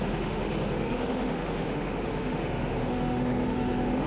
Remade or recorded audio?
remade